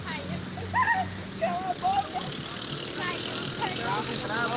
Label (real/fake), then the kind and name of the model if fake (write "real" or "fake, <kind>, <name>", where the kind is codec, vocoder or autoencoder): real